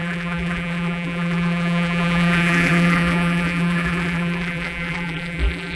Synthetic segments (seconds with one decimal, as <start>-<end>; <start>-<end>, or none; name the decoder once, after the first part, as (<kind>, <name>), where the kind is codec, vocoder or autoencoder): 0.0-5.8 (vocoder, BigVGAN v2)